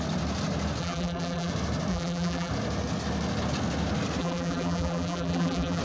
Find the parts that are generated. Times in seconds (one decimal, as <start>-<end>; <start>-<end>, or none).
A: 0.8-1.5; 1.9-2.5; 4.2-5.8